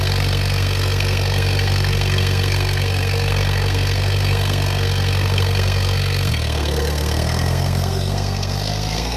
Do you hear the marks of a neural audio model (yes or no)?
yes